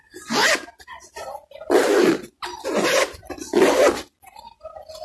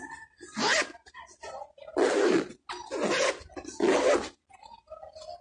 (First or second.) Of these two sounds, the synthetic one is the first